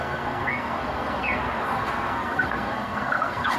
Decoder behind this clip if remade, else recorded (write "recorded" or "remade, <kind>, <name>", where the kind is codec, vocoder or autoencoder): remade, codec, SNAC